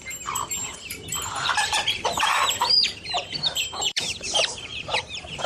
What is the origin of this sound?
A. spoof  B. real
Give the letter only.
A